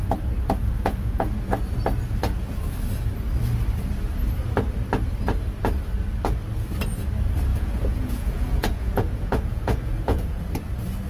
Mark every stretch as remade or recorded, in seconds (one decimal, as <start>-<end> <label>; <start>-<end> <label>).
0.0-0.6 recorded; 0.6-1.3 remade; 1.3-7.5 recorded; 7.5-10.4 remade; 10.4-11.1 recorded